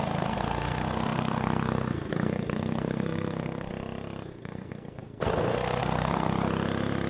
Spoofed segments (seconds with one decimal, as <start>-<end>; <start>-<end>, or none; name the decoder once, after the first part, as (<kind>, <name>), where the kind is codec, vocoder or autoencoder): 0.0-3.7 (codec, SNAC); 4.3-6.3